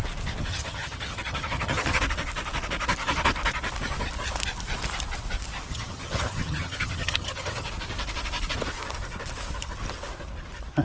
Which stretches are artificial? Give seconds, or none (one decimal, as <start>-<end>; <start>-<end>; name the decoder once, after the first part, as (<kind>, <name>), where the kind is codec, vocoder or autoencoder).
0.5-2.0 (vocoder, HiFi-GAN); 5.7-7.7